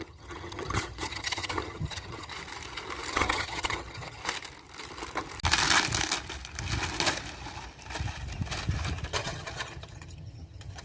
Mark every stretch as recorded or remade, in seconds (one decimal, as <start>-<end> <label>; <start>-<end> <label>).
0.0-2.3 remade; 2.3-3.1 recorded; 3.1-4.2 remade; 4.2-9.1 recorded; 9.1-10.8 remade

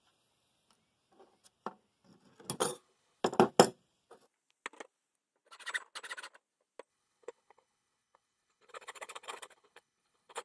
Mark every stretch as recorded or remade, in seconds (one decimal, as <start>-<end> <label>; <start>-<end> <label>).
0.0-2.6 recorded; 2.6-3.2 remade; 3.2-6.9 recorded; 6.9-10.4 remade

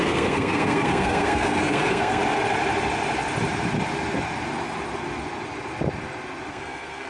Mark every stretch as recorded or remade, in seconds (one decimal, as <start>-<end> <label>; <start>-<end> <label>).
0.0-2.2 remade; 2.2-6.5 recorded; 6.5-7.1 remade

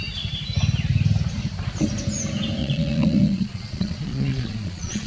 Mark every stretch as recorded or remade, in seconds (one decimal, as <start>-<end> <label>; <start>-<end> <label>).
0.0-2.6 recorded; 2.6-5.1 remade

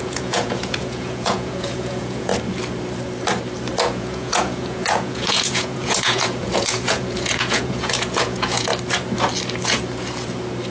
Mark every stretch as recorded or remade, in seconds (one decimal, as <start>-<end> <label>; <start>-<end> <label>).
0.0-2.3 remade; 2.3-3.7 recorded; 3.7-8.7 remade; 8.7-10.7 recorded

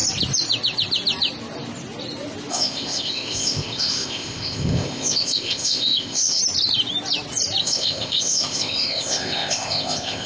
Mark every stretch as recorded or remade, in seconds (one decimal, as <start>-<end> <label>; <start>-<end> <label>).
0.0-2.5 recorded; 2.5-6.4 remade; 6.4-7.6 recorded; 7.6-10.3 remade

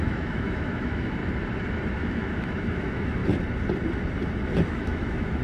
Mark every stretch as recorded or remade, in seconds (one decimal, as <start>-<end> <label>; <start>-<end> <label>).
0.0-1.2 remade; 1.2-1.9 recorded; 1.9-3.2 remade; 3.2-4.7 recorded; 4.7-5.4 remade

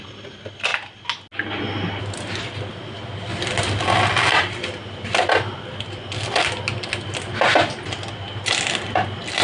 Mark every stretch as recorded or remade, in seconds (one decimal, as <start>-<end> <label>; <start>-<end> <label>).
0.0-9.4 recorded